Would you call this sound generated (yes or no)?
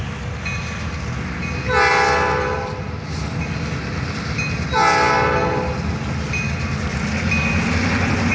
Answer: no